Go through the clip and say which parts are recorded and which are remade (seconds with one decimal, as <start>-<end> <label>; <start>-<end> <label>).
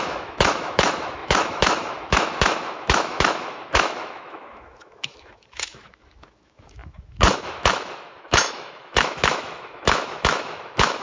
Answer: 0.0-11.0 remade